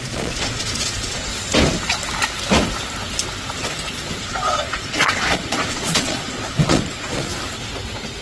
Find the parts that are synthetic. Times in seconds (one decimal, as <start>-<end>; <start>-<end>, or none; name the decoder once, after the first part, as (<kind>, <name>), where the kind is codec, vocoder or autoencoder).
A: 0.0-1.3 (vocoder, Vocos); 4.2-7.3